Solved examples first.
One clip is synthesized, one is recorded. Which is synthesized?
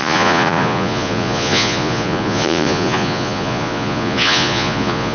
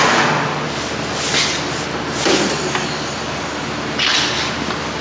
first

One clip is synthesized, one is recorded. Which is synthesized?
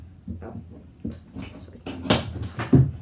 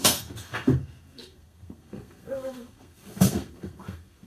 second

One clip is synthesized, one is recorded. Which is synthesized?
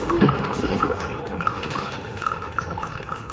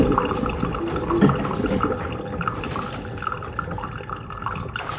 first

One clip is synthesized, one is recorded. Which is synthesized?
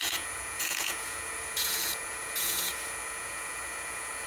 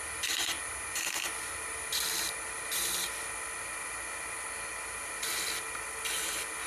first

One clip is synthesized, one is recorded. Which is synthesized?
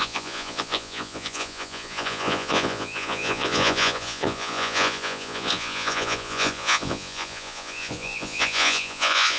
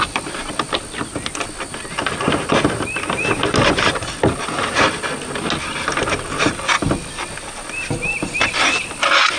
first